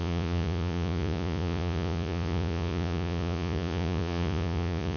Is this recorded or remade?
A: remade